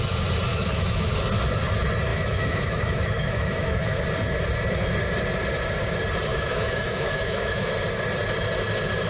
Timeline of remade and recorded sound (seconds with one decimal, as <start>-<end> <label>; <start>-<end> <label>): 0.0-0.5 recorded; 0.5-1.1 remade; 1.1-2.1 recorded; 2.1-4.0 remade; 4.0-6.3 recorded; 6.3-7.7 remade; 7.7-9.1 recorded